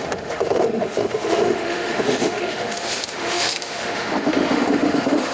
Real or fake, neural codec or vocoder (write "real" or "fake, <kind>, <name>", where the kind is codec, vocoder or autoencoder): fake, autoencoder, DAC-VAE